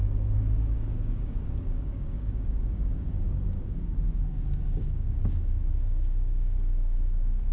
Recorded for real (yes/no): no